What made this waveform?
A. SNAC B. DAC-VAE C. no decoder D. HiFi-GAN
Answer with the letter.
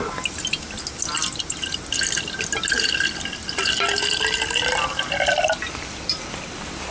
C